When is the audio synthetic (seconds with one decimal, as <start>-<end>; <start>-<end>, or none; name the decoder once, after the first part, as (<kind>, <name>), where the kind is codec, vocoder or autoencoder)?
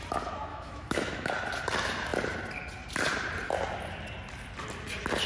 0.5-1.3 (autoencoder, DAC-VAE)